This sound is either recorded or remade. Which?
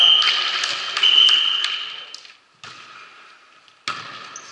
recorded